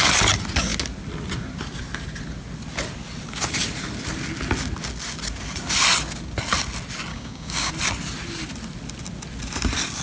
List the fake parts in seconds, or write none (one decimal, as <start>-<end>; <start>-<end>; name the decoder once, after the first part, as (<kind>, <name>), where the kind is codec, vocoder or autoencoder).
7.1-7.7 (codec, DAC)